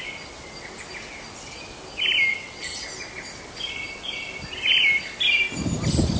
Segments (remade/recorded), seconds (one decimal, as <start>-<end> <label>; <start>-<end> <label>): 0.0-2.3 recorded; 2.3-2.8 remade; 2.8-6.2 recorded